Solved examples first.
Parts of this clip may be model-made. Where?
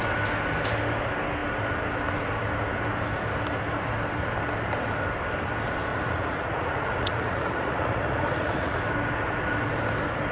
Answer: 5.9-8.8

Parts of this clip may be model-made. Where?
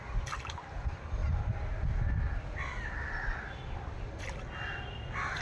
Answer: none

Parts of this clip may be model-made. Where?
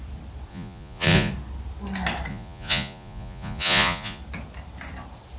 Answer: 0.5-1.3; 2.3-4.2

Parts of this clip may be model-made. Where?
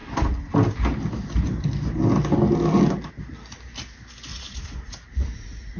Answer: 4.3-5.8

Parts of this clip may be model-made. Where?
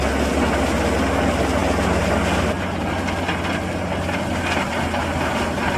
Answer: none